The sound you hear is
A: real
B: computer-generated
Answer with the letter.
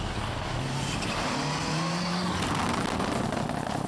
A